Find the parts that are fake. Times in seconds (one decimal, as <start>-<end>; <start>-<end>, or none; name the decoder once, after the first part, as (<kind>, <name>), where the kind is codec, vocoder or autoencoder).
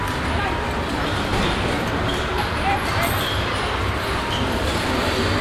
0.0-5.4 (vocoder, BigVGAN v2)